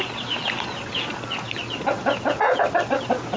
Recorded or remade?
recorded